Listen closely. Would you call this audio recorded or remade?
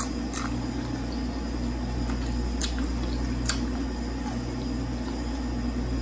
recorded